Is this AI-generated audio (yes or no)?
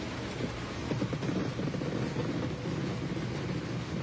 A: no